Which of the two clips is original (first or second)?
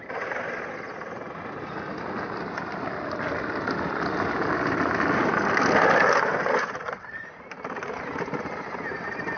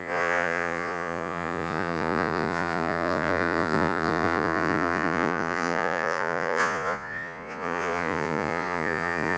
first